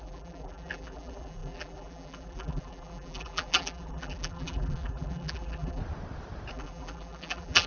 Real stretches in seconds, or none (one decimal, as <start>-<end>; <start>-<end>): 5.8-6.5